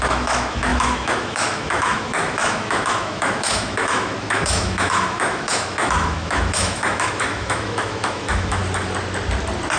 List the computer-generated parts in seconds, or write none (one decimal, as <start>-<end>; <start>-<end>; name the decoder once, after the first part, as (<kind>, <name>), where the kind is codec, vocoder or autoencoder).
0.0-8.6 (autoencoder, DAC-VAE)